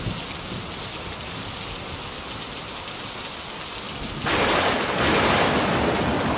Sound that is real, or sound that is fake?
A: real